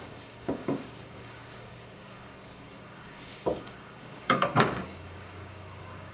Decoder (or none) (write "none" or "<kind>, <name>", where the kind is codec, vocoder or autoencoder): codec, DAC